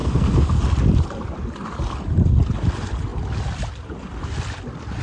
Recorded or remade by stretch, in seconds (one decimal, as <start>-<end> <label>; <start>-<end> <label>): 0.0-0.6 remade; 0.6-5.0 recorded